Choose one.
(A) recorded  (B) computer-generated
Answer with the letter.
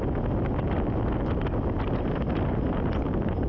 A